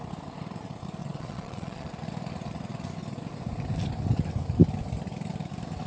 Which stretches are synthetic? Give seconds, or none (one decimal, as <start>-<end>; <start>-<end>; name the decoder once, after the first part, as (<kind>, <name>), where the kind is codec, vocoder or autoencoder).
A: 1.0-1.9 (vocoder, Vocos)